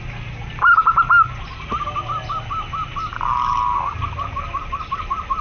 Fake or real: real